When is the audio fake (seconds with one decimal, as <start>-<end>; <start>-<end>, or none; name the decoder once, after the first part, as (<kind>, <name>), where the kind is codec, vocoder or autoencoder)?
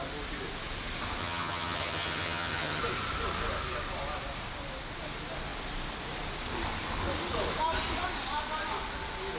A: 1.2-2.8 (vocoder, HiFi-GAN)